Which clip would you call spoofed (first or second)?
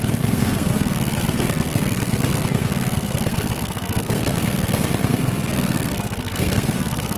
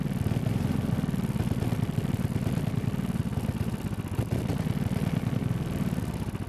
first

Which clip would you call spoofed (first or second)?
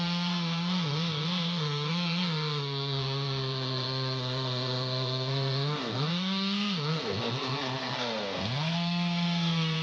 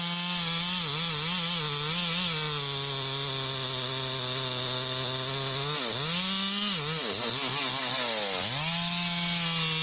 first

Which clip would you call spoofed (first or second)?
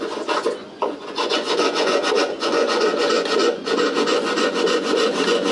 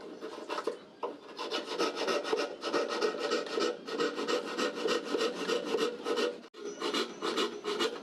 first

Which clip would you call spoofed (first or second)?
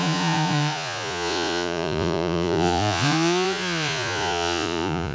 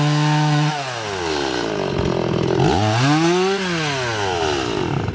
first